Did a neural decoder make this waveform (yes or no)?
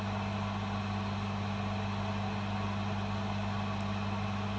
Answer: no